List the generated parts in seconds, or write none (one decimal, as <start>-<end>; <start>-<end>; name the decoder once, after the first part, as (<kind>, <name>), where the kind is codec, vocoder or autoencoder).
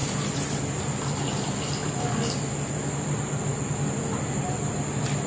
none